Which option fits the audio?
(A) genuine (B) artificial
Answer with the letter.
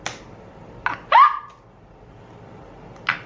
A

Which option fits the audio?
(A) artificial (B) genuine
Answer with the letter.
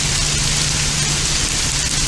B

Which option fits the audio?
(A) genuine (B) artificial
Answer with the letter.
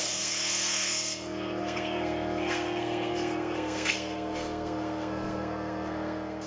B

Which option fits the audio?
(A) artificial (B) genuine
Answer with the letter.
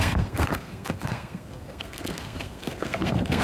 A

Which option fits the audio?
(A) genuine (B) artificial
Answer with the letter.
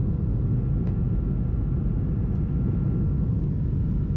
A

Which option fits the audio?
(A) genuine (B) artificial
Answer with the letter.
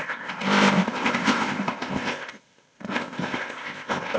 B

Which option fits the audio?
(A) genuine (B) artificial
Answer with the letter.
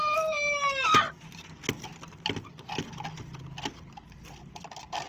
A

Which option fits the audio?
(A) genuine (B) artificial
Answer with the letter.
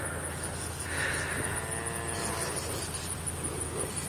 A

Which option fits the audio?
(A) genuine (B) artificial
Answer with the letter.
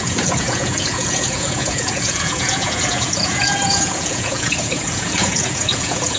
B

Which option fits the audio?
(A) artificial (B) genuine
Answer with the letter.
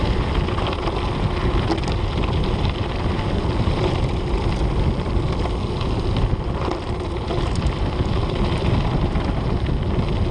B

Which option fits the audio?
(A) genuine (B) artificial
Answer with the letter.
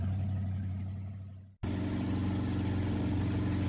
A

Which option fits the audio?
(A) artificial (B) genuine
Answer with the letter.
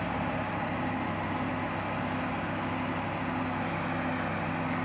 B